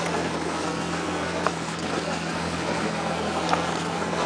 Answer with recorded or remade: remade